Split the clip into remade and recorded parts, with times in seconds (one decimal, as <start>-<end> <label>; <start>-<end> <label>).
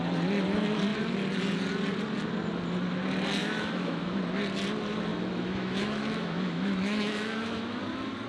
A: 0.0-3.4 recorded; 3.4-4.2 remade; 4.2-5.1 recorded; 5.1-7.8 remade; 7.8-8.3 recorded